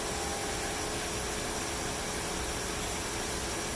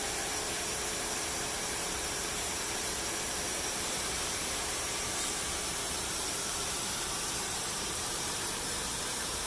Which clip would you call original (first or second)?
first